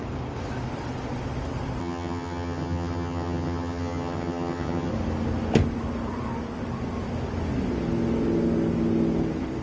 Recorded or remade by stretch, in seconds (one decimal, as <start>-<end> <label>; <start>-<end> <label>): 0.0-1.8 recorded; 1.8-4.9 remade; 4.9-9.6 recorded